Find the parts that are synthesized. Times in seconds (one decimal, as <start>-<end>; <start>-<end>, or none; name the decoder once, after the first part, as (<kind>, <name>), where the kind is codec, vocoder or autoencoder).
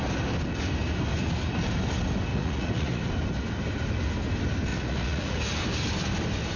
2.3-3.0 (vocoder, Vocos); 4.7-5.4